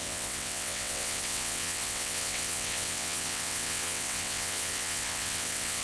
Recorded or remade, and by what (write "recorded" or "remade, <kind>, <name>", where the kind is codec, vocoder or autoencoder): remade, vocoder, WaveNeXt